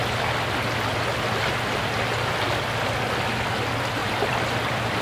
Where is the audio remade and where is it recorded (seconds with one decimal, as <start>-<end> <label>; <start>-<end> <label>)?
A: 0.0-4.0 recorded; 4.0-5.0 remade